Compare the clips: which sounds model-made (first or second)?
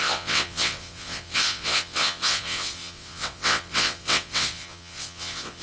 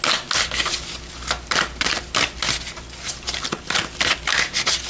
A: first